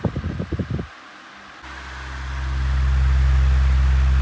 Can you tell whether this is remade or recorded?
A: recorded